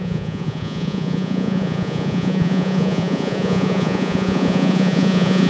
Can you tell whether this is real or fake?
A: fake